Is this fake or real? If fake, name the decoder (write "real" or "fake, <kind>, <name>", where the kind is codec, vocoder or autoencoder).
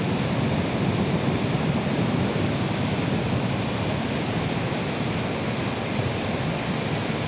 real